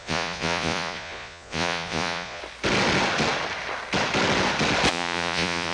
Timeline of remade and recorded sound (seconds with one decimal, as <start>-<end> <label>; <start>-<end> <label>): 0.0-2.4 remade; 2.4-4.9 recorded; 4.9-5.7 remade